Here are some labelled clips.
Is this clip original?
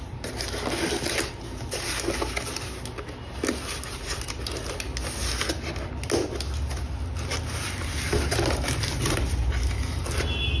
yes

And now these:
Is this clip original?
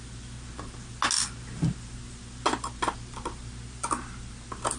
yes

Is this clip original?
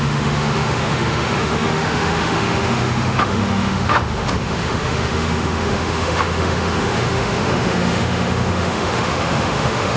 no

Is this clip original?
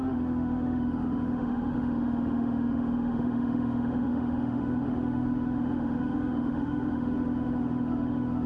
no